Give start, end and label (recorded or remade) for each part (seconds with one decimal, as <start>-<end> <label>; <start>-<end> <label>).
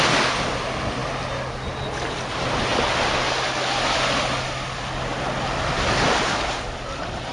0.0-7.3 recorded